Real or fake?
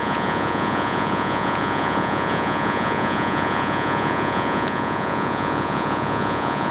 fake